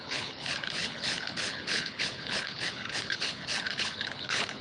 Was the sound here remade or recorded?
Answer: remade